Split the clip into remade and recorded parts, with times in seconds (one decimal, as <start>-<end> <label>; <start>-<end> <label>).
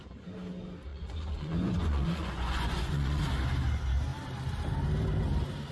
0.0-0.9 recorded; 0.9-3.2 remade; 3.2-5.7 recorded